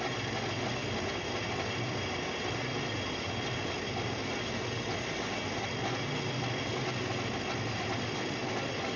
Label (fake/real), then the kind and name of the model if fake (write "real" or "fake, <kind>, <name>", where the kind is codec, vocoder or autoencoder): real